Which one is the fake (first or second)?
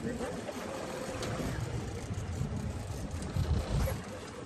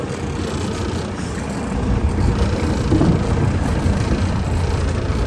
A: first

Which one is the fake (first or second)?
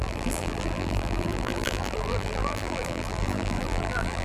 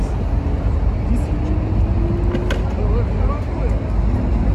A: first